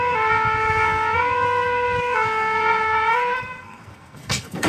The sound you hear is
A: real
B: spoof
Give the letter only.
B